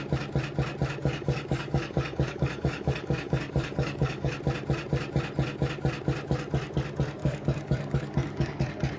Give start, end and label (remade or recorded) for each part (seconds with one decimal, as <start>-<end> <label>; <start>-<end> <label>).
0.0-1.0 recorded; 1.0-4.3 remade; 4.3-7.2 recorded; 7.2-8.6 remade; 8.6-9.0 recorded